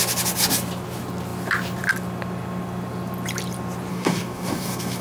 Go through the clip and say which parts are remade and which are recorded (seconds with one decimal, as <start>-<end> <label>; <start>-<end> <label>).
0.0-3.9 recorded; 3.9-5.0 remade